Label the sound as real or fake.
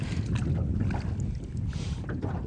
real